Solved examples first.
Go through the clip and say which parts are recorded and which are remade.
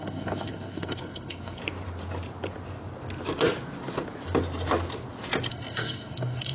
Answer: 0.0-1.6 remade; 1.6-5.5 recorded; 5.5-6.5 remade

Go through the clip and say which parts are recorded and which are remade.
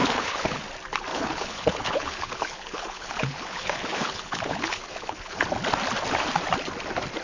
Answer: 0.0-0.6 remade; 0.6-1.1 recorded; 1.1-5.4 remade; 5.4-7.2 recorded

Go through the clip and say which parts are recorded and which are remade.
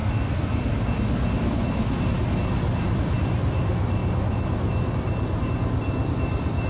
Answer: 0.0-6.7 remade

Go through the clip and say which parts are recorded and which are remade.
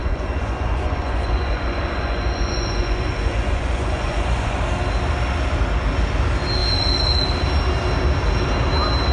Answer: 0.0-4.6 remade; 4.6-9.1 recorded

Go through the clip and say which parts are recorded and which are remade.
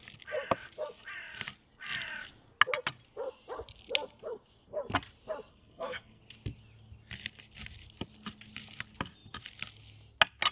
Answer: 0.0-5.5 recorded; 5.5-6.2 remade; 6.2-10.5 recorded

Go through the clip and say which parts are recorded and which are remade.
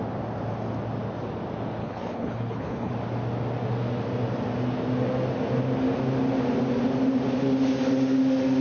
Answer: 0.0-1.8 recorded; 1.8-2.9 remade; 2.9-8.6 recorded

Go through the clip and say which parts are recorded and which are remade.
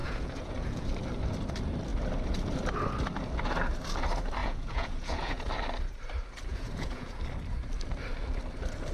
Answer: 0.0-0.8 remade; 0.8-4.4 recorded; 4.4-5.5 remade; 5.5-6.5 recorded; 6.5-7.2 remade; 7.2-8.9 recorded